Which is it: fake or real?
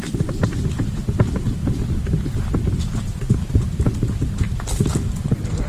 real